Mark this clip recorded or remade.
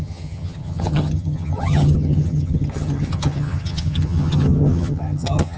remade